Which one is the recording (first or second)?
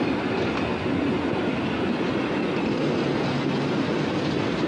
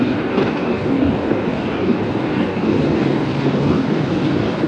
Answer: first